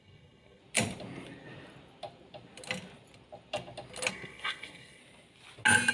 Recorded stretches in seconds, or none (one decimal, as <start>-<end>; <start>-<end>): 0.6-4.1; 5.0-5.9